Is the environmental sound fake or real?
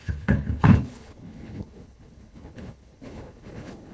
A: fake